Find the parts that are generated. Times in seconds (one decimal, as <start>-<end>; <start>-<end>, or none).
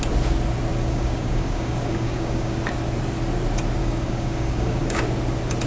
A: 0.7-2.6; 3.8-5.0